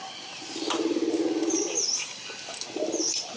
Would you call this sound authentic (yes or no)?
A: yes